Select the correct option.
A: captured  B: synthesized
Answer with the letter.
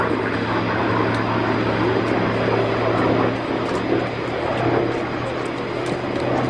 A